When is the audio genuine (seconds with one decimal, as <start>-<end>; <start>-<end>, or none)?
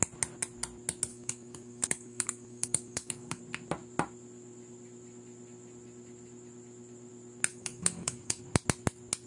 0.0-1.1; 3.4-7.5; 8.4-9.3